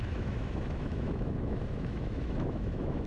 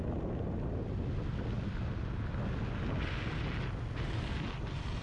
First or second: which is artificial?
first